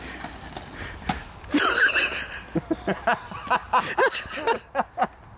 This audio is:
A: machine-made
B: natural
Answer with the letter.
B